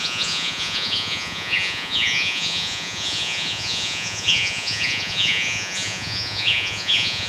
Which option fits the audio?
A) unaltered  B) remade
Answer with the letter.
B